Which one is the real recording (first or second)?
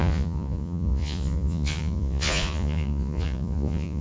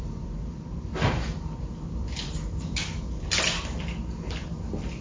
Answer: second